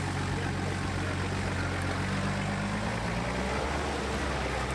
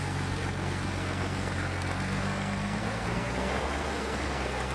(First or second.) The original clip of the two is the first